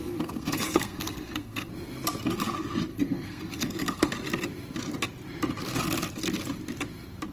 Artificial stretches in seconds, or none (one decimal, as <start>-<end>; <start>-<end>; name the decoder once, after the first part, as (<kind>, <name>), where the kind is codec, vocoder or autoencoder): 0.0-1.7 (codec, SNAC); 2.9-4.1